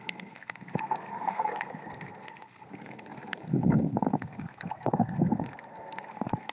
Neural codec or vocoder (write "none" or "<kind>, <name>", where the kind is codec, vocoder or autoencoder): codec, SNAC